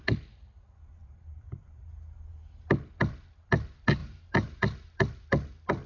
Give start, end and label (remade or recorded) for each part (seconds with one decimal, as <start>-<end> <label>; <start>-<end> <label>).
0.0-1.0 recorded; 1.0-1.9 remade; 1.9-4.0 recorded; 4.0-4.6 remade; 4.6-5.9 recorded